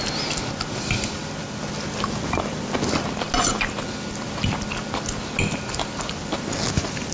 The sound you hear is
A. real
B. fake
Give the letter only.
A